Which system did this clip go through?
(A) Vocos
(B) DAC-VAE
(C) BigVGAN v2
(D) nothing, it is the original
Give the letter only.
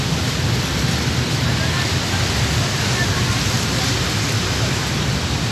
D